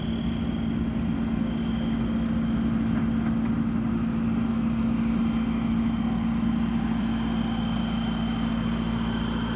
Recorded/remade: recorded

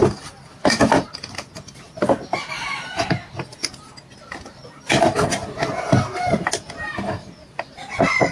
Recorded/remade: recorded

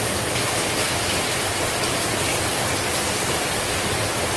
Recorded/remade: recorded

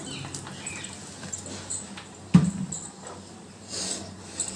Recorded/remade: recorded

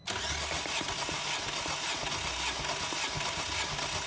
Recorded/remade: recorded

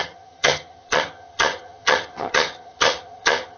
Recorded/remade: remade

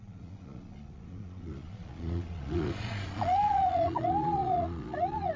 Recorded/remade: remade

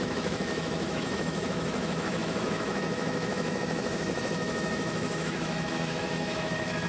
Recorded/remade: remade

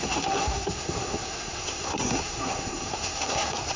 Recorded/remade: remade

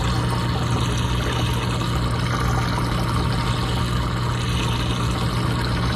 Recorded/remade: recorded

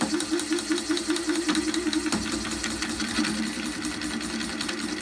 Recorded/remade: recorded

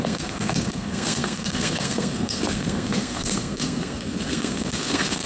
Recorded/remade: remade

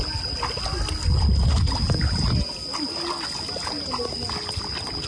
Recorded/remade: recorded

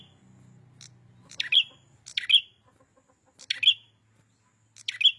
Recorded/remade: recorded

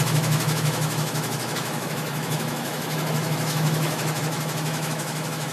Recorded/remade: remade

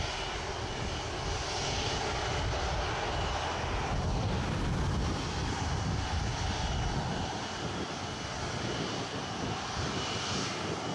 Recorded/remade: recorded